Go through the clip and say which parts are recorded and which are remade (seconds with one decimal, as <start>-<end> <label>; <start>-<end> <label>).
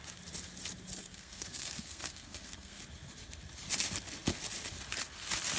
0.0-1.0 recorded; 1.0-2.8 remade; 2.8-5.6 recorded